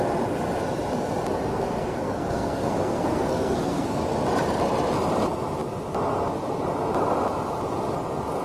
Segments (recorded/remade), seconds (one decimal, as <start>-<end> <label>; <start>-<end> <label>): 0.0-1.5 recorded; 1.5-4.0 remade; 4.0-8.4 recorded